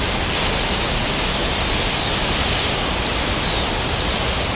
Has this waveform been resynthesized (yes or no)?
no